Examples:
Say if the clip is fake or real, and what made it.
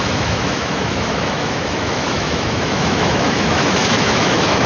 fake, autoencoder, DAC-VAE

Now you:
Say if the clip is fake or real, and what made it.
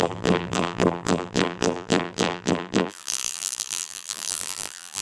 fake, vocoder, BigVGAN v2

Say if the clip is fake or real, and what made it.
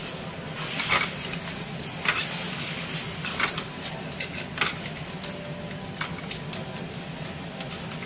real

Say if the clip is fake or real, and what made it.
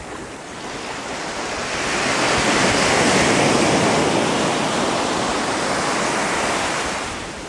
real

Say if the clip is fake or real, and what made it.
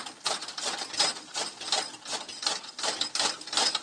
real